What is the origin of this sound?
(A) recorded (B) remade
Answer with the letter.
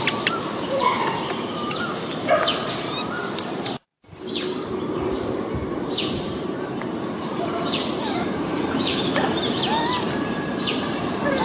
B